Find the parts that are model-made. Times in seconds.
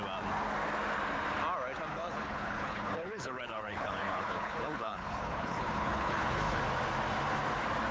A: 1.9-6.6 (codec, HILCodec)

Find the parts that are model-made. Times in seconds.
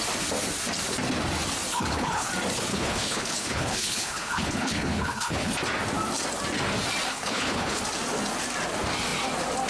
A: 1.7-2.3 (codec, HILCodec); 2.7-5.5; 7.1-7.8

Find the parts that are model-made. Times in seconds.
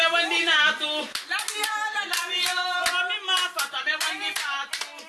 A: none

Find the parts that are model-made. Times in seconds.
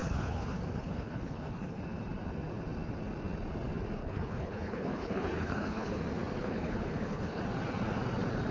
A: 0.0-1.8 (codec, HILCodec); 4.0-6.0; 6.4-7.4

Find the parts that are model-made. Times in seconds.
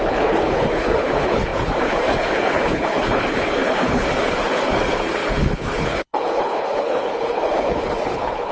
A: 0.0-8.5 (codec, HILCodec)